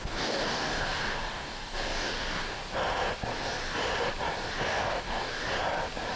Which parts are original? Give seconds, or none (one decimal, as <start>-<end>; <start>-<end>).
2.6-4.6; 5.4-6.2